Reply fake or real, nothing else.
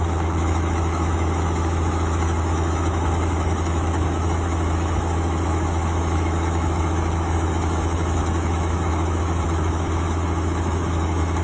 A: fake